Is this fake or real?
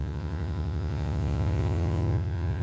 fake